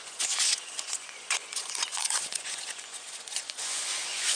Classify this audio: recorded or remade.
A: remade